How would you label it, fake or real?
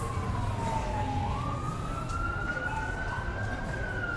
real